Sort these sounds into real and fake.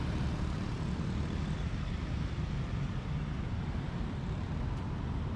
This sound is real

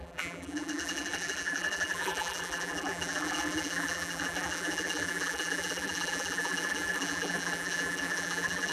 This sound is fake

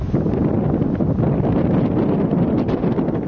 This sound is real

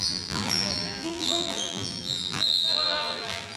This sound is fake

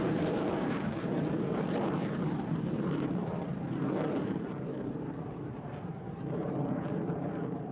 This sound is fake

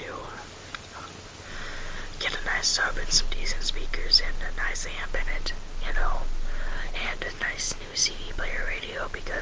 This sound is real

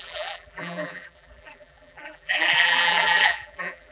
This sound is fake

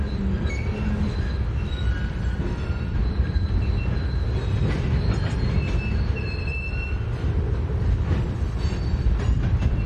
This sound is real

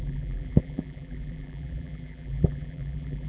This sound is fake